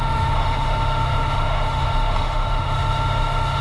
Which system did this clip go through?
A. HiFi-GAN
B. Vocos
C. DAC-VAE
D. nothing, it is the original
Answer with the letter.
C